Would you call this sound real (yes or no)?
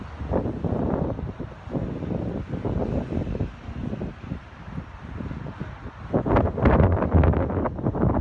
yes